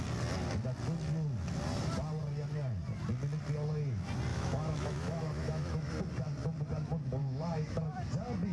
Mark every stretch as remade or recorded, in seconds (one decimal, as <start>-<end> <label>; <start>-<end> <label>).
0.0-4.3 recorded; 4.3-5.9 remade; 5.9-7.2 recorded; 7.2-7.8 remade; 7.8-8.5 recorded